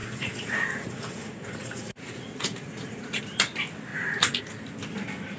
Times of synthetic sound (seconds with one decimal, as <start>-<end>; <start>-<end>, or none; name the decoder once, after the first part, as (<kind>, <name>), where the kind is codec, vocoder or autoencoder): 0.0-3.2 (vocoder, Vocos); 3.9-4.4